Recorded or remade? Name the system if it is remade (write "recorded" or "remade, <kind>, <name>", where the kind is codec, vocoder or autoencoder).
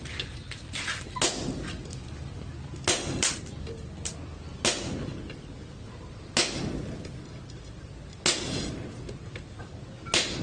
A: recorded